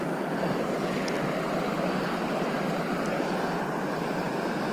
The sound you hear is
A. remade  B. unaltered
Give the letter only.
B